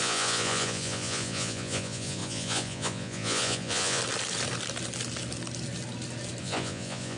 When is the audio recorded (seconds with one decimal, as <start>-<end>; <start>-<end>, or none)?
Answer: 4.0-6.4